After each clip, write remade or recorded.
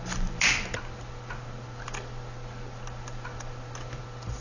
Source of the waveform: recorded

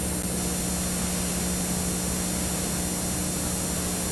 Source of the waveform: recorded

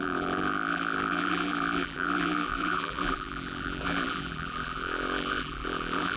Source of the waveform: remade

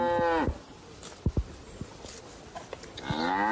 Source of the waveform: recorded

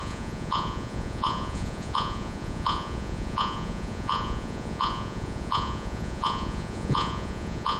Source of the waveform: remade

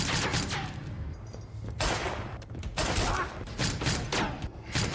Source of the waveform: recorded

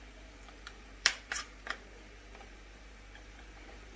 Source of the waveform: remade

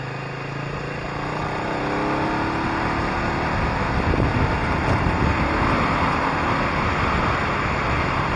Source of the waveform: recorded